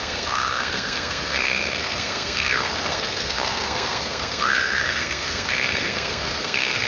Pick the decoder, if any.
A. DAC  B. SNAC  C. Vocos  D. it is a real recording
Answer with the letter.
B